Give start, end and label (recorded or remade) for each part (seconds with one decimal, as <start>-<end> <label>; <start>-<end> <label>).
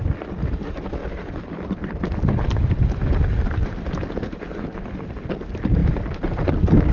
0.0-1.0 recorded; 1.0-4.6 remade; 4.6-6.9 recorded